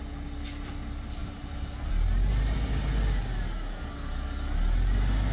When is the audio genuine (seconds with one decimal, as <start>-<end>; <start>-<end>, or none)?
0.0-5.3